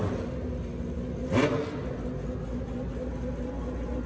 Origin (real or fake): real